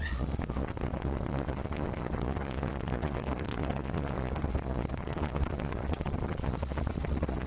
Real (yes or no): no